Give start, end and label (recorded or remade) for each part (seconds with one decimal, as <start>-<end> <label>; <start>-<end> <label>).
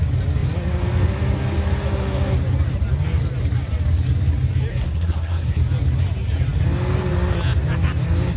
0.0-4.7 recorded; 4.7-5.6 remade; 5.6-8.4 recorded